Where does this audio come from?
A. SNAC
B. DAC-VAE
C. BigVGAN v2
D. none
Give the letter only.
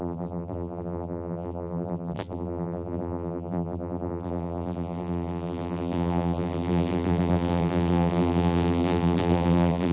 C